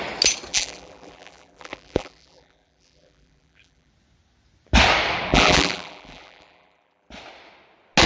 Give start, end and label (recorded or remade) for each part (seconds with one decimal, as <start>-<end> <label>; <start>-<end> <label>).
0.0-0.5 recorded; 0.5-3.9 remade; 3.9-5.3 recorded; 5.3-7.1 remade; 7.1-8.1 recorded